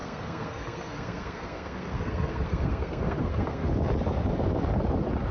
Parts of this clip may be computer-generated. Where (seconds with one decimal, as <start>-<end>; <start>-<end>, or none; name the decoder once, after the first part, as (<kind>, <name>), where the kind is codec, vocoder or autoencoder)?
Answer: 0.0-3.6 (codec, SNAC)